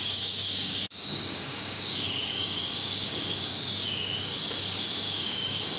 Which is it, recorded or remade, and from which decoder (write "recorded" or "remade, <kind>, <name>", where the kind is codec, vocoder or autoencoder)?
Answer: remade, codec, DAC